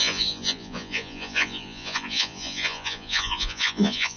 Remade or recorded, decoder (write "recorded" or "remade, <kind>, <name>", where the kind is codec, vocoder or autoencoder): remade, vocoder, Vocos